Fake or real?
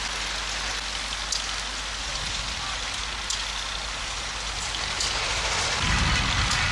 real